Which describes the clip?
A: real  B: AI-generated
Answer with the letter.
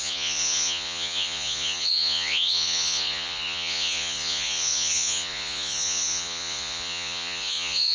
B